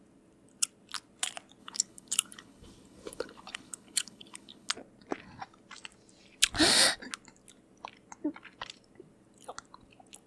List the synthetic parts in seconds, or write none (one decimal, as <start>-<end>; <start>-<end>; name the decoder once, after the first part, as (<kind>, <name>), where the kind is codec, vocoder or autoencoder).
1.6-4.7 (codec, HILCodec)